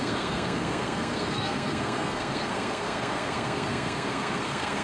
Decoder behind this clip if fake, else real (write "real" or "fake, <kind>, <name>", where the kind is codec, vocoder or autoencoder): fake, codec, SNAC